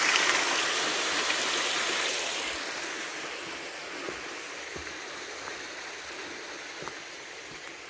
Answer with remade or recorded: recorded